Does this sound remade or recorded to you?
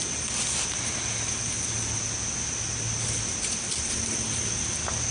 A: recorded